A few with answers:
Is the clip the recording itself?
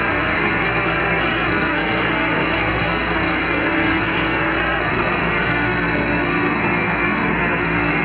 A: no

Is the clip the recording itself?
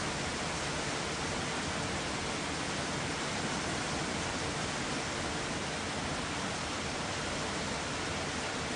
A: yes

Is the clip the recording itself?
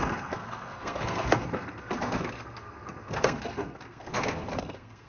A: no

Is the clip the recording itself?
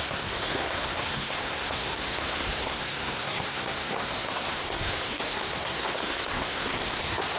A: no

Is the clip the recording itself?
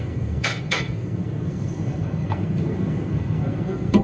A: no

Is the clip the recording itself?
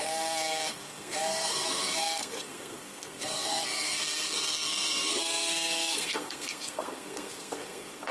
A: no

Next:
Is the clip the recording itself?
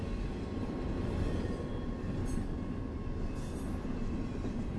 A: yes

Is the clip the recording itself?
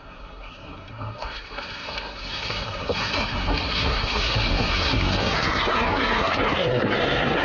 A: no